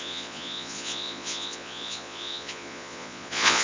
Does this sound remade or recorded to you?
remade